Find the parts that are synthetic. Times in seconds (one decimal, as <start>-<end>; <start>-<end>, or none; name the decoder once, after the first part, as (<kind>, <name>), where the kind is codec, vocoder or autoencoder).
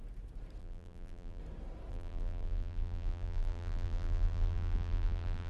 0.6-1.4 (vocoder, BigVGAN v2); 1.9-5.5